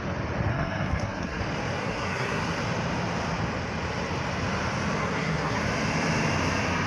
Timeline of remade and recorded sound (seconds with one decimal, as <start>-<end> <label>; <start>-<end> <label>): 0.0-0.5 recorded; 0.5-1.4 remade; 1.4-1.8 recorded; 1.8-2.4 remade; 2.4-5.0 recorded; 5.0-5.6 remade; 5.6-6.9 recorded